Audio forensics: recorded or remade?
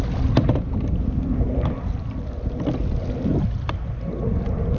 recorded